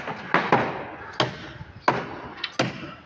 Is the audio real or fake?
real